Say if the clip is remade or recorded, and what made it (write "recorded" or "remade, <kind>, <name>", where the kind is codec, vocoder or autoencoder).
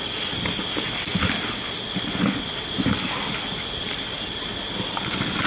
recorded